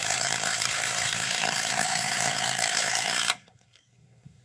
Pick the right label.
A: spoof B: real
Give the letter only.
A